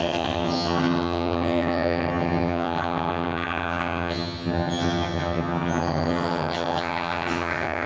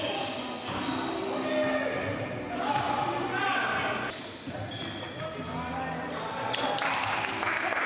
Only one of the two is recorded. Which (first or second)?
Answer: second